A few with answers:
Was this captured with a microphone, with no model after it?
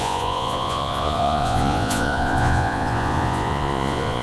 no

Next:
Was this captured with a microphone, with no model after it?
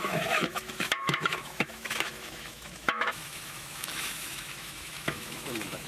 no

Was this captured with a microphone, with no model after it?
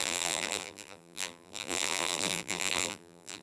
no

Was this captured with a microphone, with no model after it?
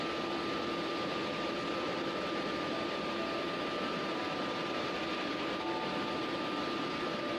yes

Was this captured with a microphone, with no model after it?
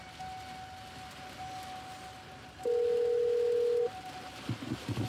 yes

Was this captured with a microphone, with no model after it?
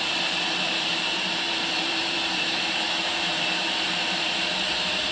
no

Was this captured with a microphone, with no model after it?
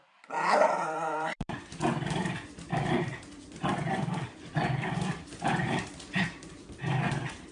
no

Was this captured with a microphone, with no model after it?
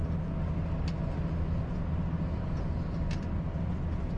yes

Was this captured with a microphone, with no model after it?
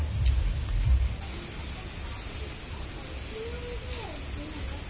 yes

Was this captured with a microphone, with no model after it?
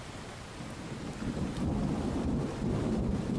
yes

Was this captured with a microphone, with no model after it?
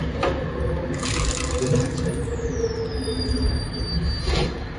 yes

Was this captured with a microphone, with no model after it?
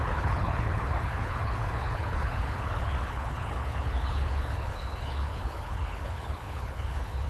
no